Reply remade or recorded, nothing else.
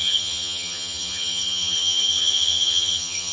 remade